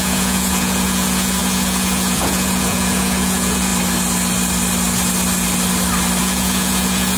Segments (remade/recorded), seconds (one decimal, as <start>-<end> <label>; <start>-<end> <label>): 0.0-3.7 remade; 3.7-6.2 recorded; 6.2-7.2 remade